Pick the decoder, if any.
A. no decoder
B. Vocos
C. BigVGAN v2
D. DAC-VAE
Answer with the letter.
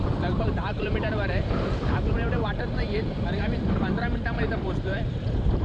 C